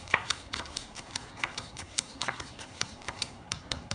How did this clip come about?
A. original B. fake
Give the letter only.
B